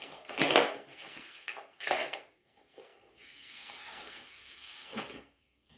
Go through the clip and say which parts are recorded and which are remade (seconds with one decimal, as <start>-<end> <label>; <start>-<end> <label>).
0.0-5.8 remade